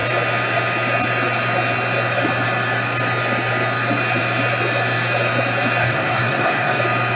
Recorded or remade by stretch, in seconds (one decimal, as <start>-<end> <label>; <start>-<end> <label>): 0.0-5.8 recorded; 5.8-6.8 remade; 6.8-7.2 recorded